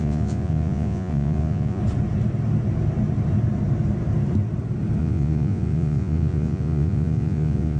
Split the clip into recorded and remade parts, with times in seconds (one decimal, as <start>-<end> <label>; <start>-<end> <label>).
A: 0.0-1.8 remade; 1.8-5.0 recorded; 5.0-7.8 remade